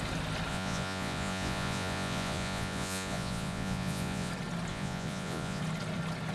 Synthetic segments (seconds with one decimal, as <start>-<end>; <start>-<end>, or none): 0.5-4.3; 4.7-5.6

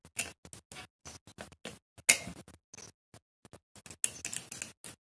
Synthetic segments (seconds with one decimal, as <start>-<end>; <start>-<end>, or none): none

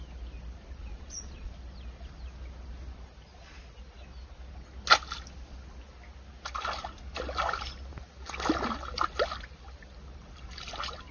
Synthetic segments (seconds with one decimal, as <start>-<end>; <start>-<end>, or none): 0.8-1.5

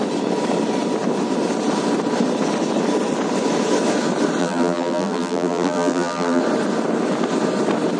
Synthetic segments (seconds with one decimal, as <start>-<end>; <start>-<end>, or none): 4.4-6.4